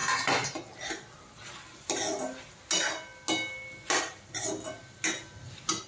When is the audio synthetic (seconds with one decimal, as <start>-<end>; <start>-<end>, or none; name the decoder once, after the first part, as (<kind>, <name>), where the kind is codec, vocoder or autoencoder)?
none